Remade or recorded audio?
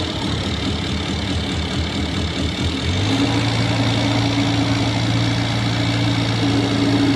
recorded